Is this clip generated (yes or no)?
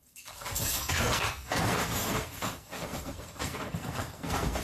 yes